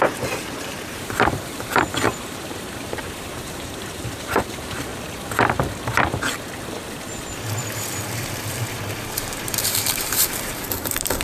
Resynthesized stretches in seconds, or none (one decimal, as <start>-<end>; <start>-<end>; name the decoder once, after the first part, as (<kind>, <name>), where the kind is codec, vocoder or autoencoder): 0.0-4.9 (vocoder, BigVGAN v2); 9.4-11.2